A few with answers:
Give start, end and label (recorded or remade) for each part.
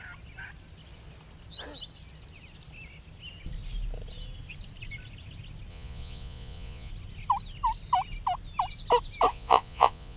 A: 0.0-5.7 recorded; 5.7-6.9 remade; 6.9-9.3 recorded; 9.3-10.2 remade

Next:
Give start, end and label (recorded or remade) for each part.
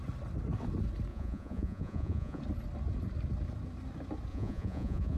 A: 0.0-1.1 recorded; 1.1-2.4 remade; 2.4-4.3 recorded; 4.3-5.2 remade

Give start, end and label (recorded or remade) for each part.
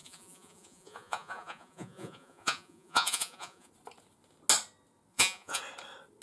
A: 0.0-3.7 remade; 3.7-5.1 recorded; 5.1-5.6 remade; 5.6-6.2 recorded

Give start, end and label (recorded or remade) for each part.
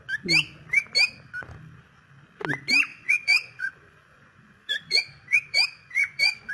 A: 0.0-2.9 recorded; 2.9-6.5 remade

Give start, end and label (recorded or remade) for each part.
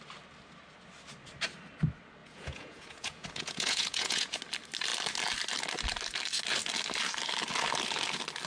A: 0.0-2.2 recorded; 2.2-4.4 remade; 4.4-8.5 recorded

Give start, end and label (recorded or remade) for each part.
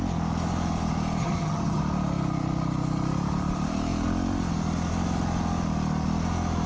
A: 0.0-1.2 recorded; 1.2-1.8 remade; 1.8-6.7 recorded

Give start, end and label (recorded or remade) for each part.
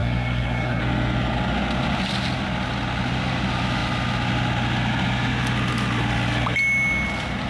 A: 0.0-0.8 remade; 0.8-7.5 recorded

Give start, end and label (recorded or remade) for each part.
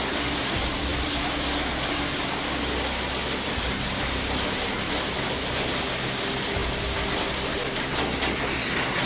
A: 0.0-9.1 recorded